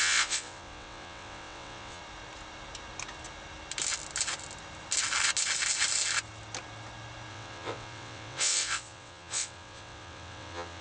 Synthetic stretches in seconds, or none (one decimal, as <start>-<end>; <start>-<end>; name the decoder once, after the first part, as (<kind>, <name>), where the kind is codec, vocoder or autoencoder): 0.0-2.0 (vocoder, WaveNeXt); 7.3-10.8